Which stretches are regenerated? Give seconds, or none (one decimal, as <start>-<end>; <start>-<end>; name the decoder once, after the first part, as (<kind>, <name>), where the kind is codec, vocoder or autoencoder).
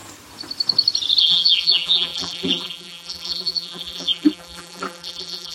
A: 1.2-5.5 (vocoder, BigVGAN v2)